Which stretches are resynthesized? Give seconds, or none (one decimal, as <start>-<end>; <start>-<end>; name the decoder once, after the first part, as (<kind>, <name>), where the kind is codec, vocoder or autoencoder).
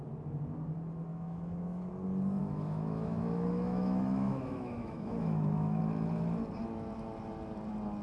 1.1-1.9 (autoencoder, DAC-VAE); 2.4-5.8